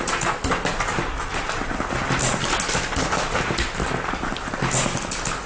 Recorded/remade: recorded